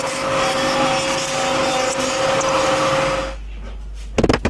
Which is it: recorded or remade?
recorded